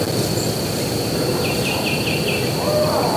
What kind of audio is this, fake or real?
real